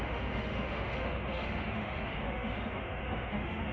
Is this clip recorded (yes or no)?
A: no